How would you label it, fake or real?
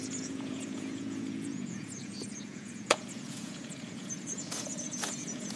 fake